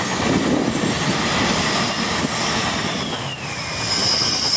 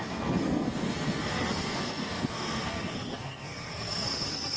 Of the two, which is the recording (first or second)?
first